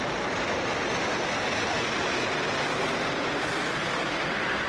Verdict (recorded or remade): recorded